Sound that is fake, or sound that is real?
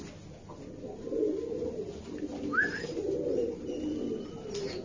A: real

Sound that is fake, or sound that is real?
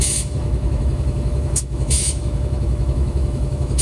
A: fake